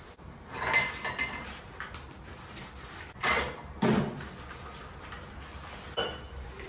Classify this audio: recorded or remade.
recorded